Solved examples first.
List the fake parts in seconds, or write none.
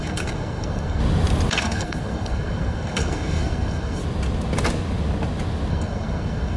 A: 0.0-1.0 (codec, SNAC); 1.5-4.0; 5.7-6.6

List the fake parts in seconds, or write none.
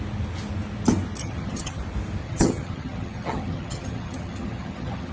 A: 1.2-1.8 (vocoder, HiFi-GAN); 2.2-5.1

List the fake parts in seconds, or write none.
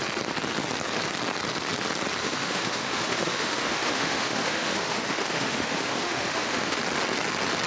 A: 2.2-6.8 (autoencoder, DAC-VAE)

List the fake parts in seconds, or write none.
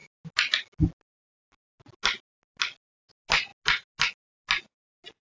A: none